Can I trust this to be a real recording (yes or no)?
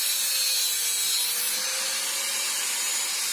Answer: yes